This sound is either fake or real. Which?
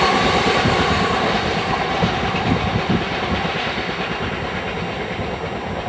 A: real